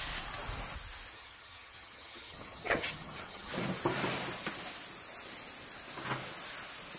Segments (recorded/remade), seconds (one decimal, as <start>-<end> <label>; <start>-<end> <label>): 0.0-1.1 recorded; 1.1-3.5 remade; 3.5-7.0 recorded